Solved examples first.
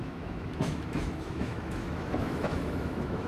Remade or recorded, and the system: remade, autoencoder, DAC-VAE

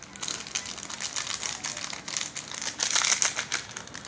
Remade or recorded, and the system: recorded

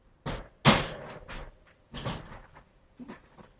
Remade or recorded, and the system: recorded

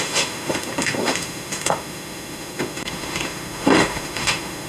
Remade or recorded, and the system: remade, autoencoder, DAC-VAE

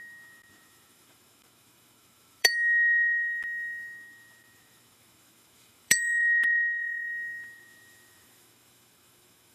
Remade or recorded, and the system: remade, autoencoder, DAC-VAE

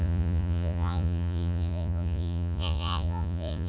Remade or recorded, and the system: remade, vocoder, Vocos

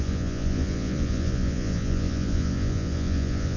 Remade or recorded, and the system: remade, vocoder, Vocos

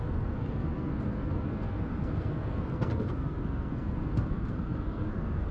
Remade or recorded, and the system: remade, codec, SNAC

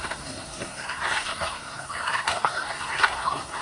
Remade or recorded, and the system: remade, codec, SNAC